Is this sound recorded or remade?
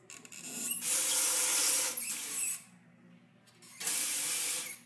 recorded